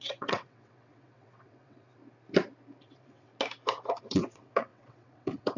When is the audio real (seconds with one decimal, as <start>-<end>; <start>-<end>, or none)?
2.0-2.8; 3.3-4.0